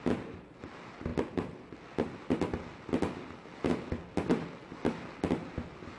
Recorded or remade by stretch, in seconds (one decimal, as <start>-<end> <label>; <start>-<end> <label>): 0.0-6.0 recorded